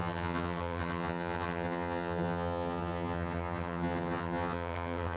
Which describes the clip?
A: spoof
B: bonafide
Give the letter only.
A